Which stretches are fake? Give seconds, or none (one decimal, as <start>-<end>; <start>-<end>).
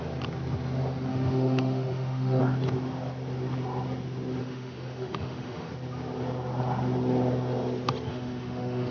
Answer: 1.1-2.4; 4.4-5.7; 8.1-8.9